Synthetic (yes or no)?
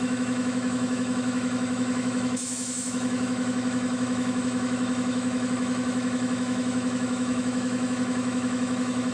yes